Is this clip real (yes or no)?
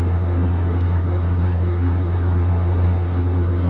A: no